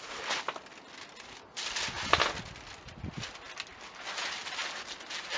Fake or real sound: real